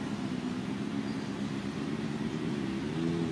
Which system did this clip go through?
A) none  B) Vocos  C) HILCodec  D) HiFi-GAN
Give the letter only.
A